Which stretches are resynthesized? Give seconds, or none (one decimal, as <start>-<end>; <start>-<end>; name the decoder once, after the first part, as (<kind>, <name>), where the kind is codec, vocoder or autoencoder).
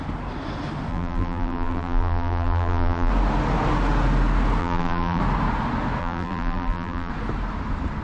0.9-3.1 (vocoder, BigVGAN v2); 4.6-5.2; 6.0-7.1